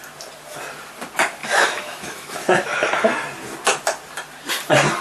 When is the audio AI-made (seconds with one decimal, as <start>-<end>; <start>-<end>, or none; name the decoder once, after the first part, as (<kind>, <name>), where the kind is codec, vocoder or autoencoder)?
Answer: 1.4-2.9 (autoencoder, DAC-VAE)

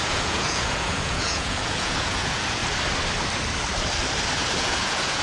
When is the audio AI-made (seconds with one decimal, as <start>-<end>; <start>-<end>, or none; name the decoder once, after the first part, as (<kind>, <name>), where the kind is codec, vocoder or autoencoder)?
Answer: 0.0-2.6 (vocoder, Vocos); 4.6-5.2

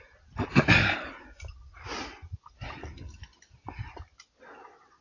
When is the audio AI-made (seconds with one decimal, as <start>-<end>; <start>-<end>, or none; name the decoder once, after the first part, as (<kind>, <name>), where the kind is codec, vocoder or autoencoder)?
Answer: none

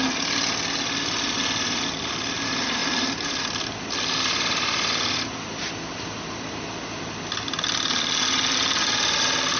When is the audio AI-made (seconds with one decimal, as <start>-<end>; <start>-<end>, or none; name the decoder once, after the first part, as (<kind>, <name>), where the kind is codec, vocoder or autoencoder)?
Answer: 2.8-3.4 (vocoder, BigVGAN v2)

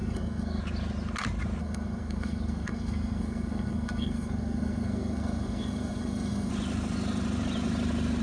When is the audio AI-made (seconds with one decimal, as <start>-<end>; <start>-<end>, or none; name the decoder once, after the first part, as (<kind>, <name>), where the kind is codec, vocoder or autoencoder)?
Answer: 0.0-0.6 (codec, SNAC); 1.6-6.5